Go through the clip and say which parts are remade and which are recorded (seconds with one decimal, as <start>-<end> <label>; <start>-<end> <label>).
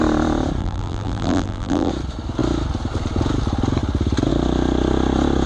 0.0-0.6 recorded; 0.6-1.9 remade; 1.9-5.5 recorded